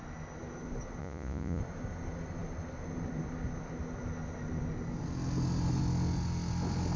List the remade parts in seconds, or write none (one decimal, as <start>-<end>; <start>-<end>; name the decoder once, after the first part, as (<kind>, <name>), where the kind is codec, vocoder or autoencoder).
1.0-1.6 (vocoder, Vocos)

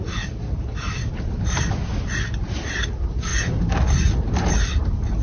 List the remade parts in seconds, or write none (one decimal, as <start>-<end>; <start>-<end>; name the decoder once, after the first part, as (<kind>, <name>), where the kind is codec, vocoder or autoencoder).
none

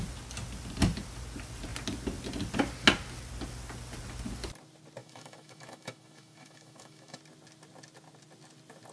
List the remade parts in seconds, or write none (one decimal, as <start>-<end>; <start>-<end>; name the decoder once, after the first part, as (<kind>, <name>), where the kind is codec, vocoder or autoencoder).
5.0-7.2 (autoencoder, DAC-VAE)

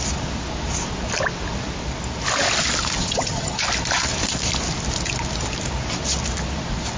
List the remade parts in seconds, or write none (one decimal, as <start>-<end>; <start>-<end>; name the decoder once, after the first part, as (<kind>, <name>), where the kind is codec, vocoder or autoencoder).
3.0-3.6 (vocoder, HiFi-GAN)

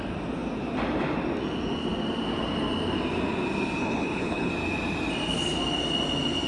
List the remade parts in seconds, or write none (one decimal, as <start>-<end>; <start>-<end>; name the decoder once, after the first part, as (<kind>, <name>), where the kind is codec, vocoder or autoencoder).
3.8-4.5 (codec, HILCodec)

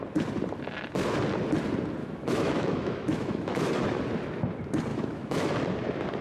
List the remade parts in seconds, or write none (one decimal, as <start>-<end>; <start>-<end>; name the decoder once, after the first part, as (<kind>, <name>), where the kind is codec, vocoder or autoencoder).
2.0-4.0 (autoencoder, DAC-VAE); 4.9-5.5